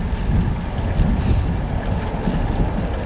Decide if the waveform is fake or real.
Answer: real